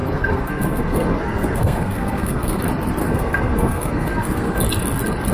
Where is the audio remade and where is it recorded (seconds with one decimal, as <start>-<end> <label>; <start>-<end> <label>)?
0.0-2.6 remade; 2.6-3.0 recorded; 3.0-4.6 remade; 4.6-5.3 recorded

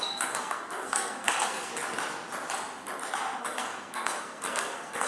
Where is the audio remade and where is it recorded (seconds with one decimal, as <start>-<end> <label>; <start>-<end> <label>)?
0.0-1.7 remade; 1.7-3.4 recorded; 3.4-5.1 remade

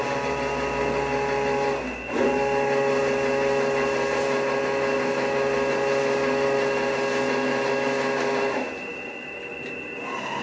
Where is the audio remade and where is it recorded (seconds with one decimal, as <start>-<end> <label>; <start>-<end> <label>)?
0.0-10.4 recorded

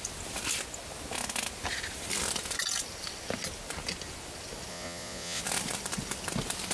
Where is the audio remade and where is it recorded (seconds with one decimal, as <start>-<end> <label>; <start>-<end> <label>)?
0.0-4.7 recorded; 4.7-5.4 remade; 5.4-6.7 recorded